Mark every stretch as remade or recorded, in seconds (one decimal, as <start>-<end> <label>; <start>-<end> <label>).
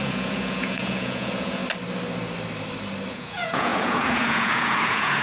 0.0-1.6 remade; 1.6-3.1 recorded; 3.1-5.2 remade